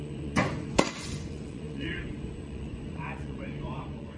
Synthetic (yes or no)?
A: yes